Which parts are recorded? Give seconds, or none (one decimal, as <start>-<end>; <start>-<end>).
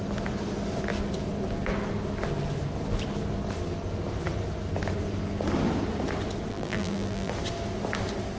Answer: 0.0-6.5; 7.3-8.4